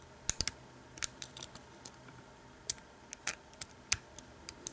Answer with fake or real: real